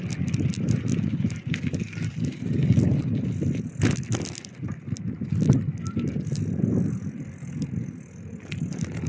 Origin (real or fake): real